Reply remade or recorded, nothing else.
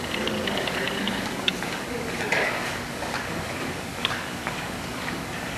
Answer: remade